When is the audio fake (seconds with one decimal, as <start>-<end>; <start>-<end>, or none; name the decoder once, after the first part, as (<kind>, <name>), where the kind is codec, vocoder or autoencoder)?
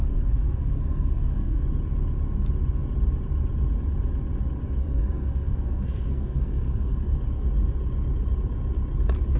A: 0.0-1.6 (codec, SNAC); 4.8-7.1